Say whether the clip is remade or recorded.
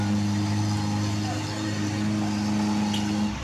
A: recorded